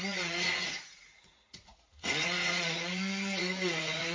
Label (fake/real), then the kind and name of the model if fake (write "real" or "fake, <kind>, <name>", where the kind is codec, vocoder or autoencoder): fake, vocoder, Vocos